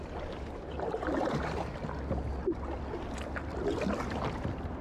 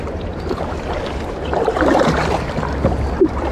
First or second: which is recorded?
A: first